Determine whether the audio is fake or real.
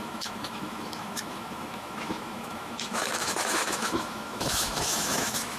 fake